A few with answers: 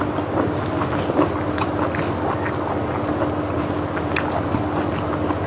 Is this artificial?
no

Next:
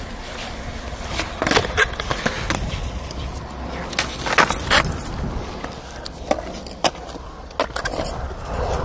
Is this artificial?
no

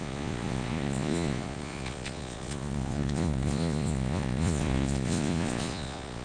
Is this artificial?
yes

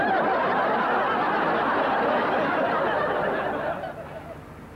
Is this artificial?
no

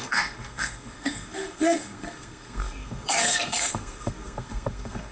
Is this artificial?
yes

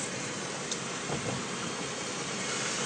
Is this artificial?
no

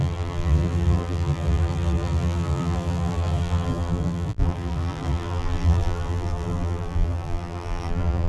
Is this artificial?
yes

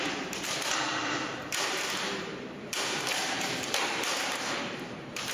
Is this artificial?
yes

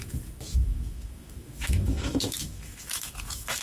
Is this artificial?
yes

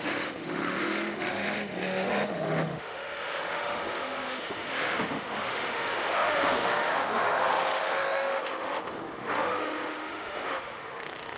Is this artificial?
yes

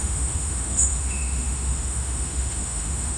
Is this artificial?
yes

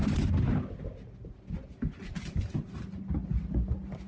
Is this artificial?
no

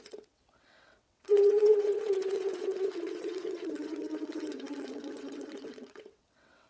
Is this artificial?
yes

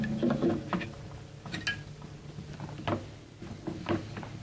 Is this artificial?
no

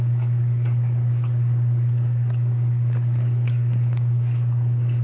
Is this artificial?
yes